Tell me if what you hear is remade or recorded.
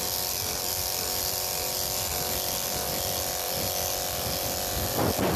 remade